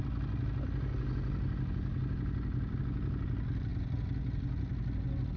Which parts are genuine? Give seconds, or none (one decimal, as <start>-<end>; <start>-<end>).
0.0-5.4